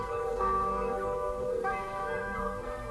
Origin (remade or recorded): remade